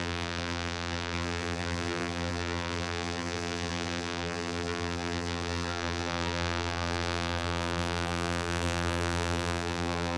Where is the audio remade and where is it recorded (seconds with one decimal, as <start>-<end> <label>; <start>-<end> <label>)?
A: 0.0-10.2 remade